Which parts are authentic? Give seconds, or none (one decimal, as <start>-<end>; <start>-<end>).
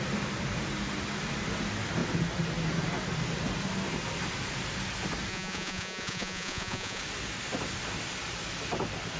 0.0-5.3; 7.0-9.2